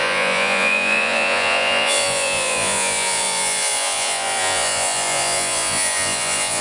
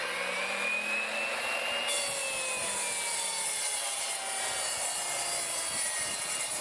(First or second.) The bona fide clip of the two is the second